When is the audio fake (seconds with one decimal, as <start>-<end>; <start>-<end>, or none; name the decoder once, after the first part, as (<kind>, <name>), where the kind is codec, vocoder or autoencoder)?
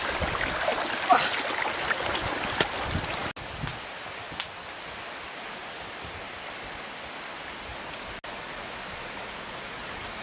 none